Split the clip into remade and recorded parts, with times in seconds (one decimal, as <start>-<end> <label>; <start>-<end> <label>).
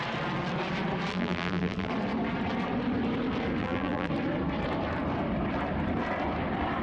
0.0-1.1 recorded; 1.1-1.9 remade; 1.9-3.6 recorded; 3.6-4.1 remade; 4.1-6.8 recorded